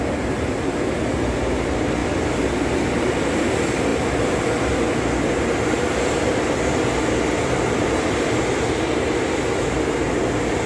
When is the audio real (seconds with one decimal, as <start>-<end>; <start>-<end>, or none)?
0.0-2.0; 2.9-3.9; 4.7-10.7